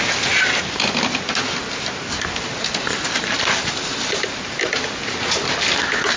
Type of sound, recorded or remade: recorded